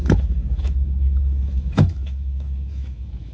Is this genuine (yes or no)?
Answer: no